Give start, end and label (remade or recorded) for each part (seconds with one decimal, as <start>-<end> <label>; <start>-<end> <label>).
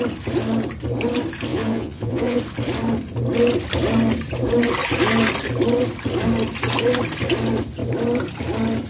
0.0-1.5 recorded; 1.5-2.4 remade; 2.4-8.9 recorded